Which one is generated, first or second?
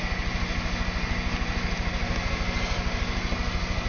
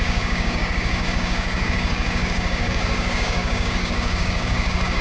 second